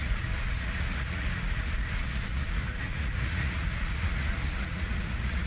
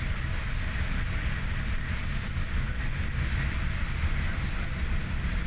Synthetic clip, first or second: first